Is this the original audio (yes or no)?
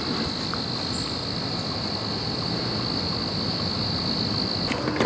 yes